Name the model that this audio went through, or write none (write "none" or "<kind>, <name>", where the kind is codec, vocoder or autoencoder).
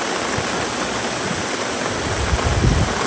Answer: none